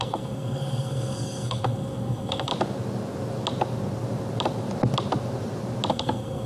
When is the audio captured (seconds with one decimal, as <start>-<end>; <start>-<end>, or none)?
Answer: 2.5-5.9